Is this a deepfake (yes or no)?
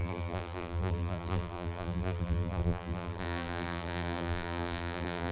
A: yes